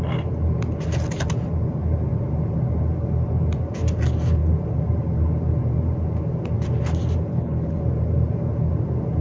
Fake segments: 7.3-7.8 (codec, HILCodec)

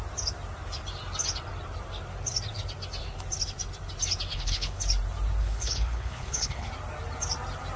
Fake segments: 4.3-4.8 (codec, HILCodec); 5.4-6.7

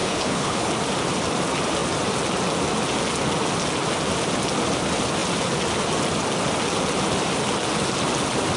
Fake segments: 0.0-0.7 (codec, HILCodec)